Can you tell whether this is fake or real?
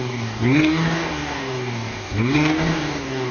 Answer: fake